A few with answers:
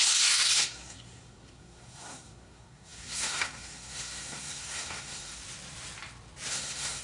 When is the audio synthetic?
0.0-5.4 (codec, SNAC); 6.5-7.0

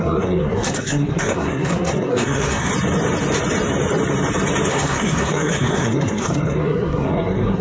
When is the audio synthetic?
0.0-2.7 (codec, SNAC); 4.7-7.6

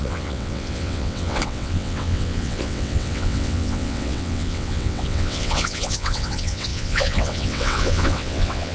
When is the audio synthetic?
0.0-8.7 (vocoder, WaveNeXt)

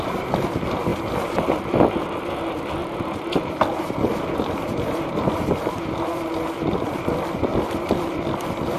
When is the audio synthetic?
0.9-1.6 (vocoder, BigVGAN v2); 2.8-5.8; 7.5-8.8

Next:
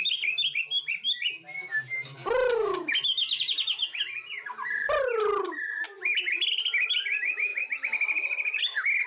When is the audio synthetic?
none

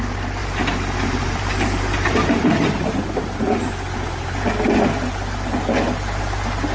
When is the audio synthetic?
0.4-3.5 (vocoder, BigVGAN v2)